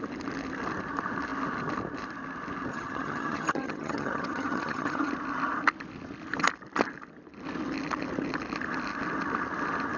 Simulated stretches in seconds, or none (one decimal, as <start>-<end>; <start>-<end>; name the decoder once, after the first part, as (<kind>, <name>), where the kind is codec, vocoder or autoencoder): 2.7-5.1 (vocoder, HiFi-GAN)